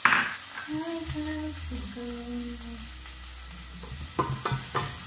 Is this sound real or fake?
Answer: real